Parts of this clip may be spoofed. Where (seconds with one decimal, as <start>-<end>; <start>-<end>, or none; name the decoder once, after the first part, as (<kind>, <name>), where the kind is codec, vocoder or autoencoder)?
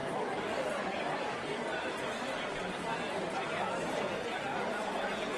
none